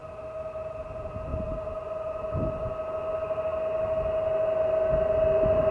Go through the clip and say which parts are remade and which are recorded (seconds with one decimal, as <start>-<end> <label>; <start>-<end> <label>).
0.0-5.7 recorded